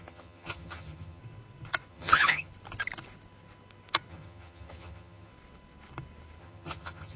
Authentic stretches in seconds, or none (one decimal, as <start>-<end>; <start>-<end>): 1.2-1.9; 2.5-4.1; 5.3-6.4